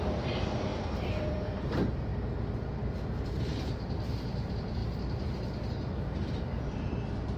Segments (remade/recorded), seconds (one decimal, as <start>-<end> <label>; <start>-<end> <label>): 0.0-2.1 remade; 2.1-3.0 recorded; 3.0-4.8 remade; 4.8-5.7 recorded; 5.7-7.4 remade